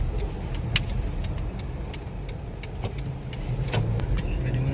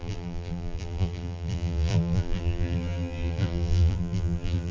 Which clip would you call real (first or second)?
first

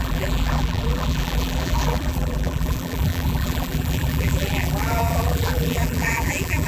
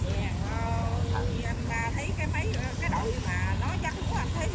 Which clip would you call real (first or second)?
second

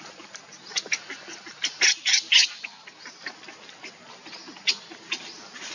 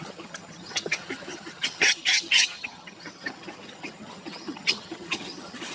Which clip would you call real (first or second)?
first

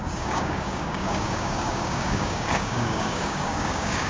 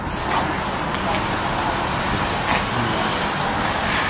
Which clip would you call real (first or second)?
second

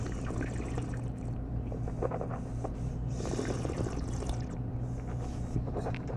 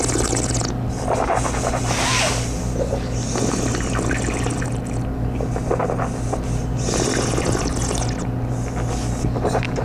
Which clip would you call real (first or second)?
second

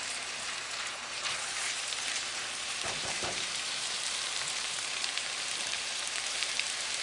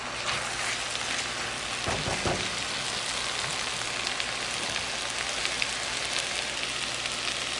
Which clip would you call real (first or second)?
second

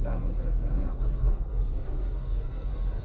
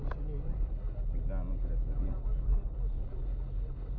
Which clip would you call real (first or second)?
second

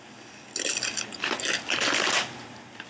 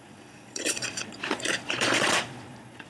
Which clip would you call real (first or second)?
first